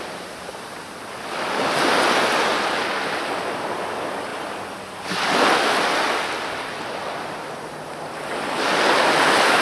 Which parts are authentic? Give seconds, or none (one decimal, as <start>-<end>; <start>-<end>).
0.0-9.6